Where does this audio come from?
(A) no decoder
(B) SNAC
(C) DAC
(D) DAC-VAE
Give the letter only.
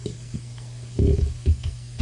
B